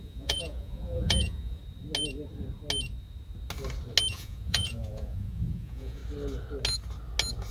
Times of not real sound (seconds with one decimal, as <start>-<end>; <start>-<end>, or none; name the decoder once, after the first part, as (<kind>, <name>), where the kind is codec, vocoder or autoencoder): 0.0-1.6 (vocoder, Vocos); 4.1-6.0